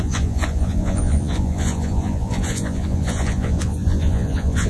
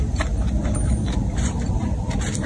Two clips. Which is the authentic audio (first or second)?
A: second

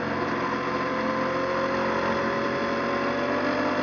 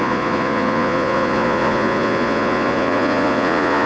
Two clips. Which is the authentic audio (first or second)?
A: first